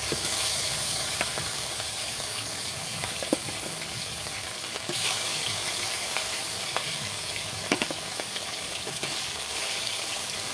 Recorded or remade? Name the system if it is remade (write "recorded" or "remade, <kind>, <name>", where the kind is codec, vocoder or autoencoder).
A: remade, codec, DAC